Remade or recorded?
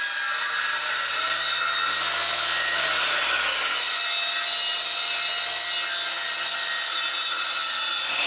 recorded